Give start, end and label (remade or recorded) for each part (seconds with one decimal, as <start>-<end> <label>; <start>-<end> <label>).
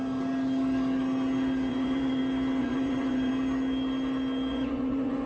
0.0-1.7 recorded; 1.7-2.2 remade; 2.2-2.6 recorded; 2.6-3.3 remade; 3.3-4.5 recorded; 4.5-5.3 remade